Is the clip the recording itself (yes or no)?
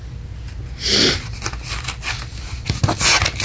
yes